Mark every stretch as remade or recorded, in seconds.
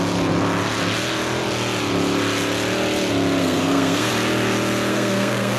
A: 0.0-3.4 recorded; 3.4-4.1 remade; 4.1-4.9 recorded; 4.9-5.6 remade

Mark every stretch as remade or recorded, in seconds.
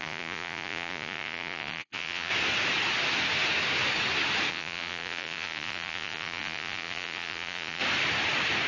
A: 0.0-2.3 remade; 2.3-4.5 recorded; 4.5-7.8 remade; 7.8-8.7 recorded